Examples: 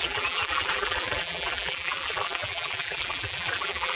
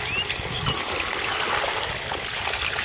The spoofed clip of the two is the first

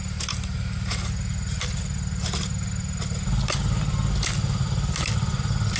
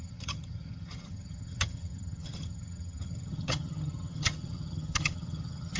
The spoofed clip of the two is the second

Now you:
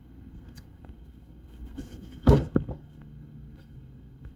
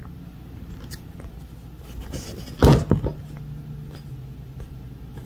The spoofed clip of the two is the first